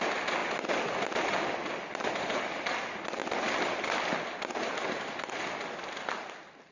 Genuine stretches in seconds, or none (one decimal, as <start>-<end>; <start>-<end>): 0.0-6.7